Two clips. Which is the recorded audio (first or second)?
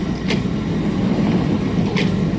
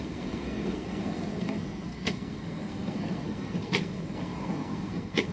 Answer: first